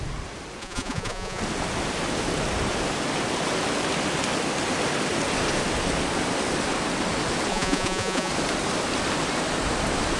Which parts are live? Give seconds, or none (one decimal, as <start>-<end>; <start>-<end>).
0.0-0.6; 1.4-7.5; 8.3-10.2